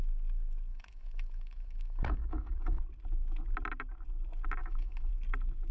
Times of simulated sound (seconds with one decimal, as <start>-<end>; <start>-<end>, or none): 0.7-2.8; 4.6-5.1